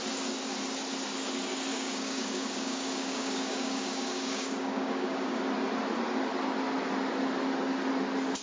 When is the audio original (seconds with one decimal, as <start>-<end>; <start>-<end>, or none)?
0.0-1.7; 5.4-8.4